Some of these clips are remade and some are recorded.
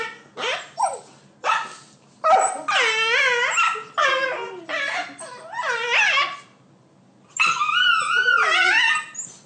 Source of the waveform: recorded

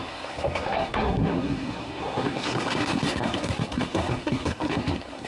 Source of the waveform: remade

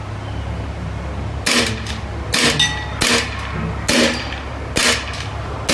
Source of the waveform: recorded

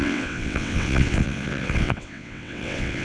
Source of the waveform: remade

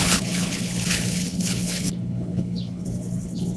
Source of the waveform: remade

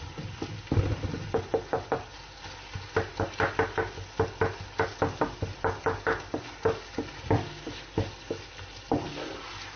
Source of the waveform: recorded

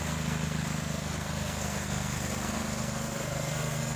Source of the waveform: remade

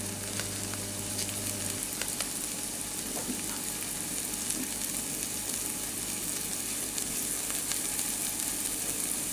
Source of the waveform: recorded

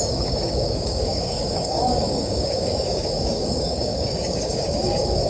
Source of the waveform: remade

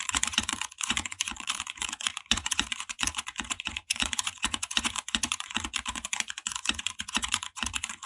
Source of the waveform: remade